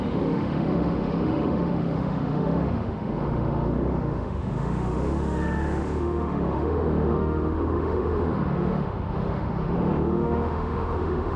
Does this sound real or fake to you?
fake